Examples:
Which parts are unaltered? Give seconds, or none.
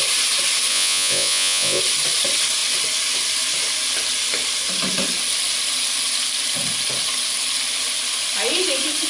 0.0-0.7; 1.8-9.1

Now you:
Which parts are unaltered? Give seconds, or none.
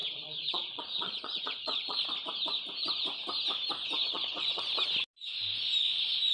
2.1-4.0; 4.6-6.3